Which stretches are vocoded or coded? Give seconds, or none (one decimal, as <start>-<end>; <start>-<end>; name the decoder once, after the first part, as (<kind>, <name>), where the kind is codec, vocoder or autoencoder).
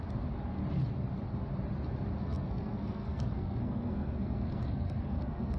2.2-5.6 (codec, SNAC)